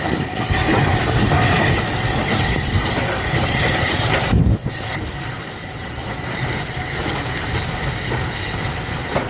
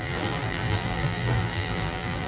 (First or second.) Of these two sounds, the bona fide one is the first